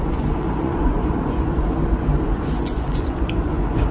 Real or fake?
fake